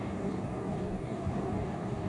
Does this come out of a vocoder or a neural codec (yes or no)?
yes